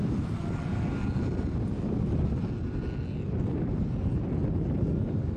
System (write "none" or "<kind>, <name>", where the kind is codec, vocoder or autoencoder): none